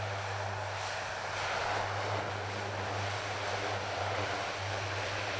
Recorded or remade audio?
recorded